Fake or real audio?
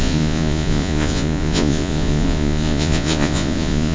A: fake